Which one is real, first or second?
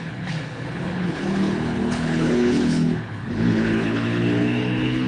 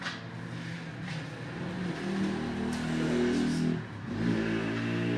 second